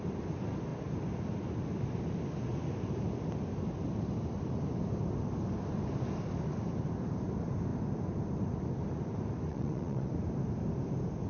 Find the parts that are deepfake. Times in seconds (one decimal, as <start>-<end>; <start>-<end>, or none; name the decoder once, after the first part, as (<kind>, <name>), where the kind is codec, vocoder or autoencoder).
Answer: 9.5-10.1 (vocoder, WaveNeXt)